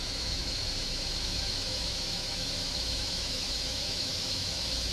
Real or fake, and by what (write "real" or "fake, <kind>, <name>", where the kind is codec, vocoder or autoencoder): fake, autoencoder, DAC-VAE